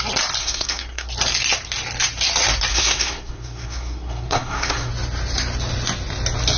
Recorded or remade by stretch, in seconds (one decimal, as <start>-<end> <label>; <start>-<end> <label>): 0.0-0.4 recorded; 0.4-1.1 remade; 1.1-2.7 recorded; 2.7-4.9 remade; 4.9-6.6 recorded